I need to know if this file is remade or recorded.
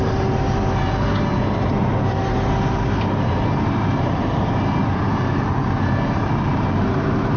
remade